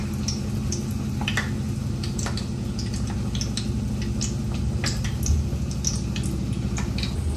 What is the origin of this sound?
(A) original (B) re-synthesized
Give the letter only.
A